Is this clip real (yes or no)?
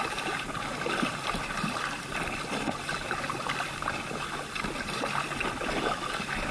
yes